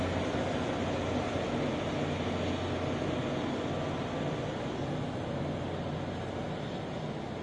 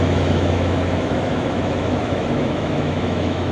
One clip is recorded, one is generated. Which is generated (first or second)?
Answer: second